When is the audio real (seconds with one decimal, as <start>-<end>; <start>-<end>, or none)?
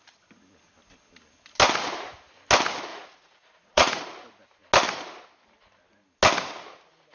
0.0-2.9; 4.0-7.1